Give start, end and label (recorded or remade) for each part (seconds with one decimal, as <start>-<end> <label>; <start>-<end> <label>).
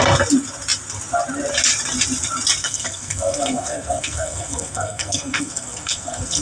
0.0-2.6 recorded; 2.6-6.4 remade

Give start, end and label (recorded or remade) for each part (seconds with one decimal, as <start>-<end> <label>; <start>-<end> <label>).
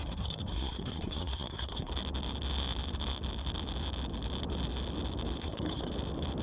0.0-1.9 remade; 1.9-5.4 recorded; 5.4-5.9 remade; 5.9-6.4 recorded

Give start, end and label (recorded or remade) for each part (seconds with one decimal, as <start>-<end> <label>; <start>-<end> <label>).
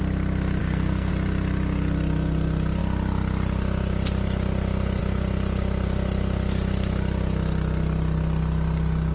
0.0-0.6 recorded; 0.6-1.1 remade; 1.1-9.1 recorded